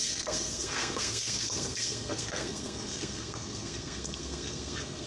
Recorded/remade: remade